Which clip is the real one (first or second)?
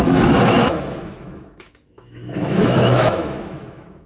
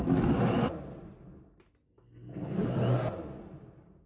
second